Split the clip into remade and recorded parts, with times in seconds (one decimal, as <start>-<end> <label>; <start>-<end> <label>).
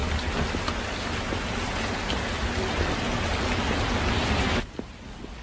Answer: 0.0-5.4 recorded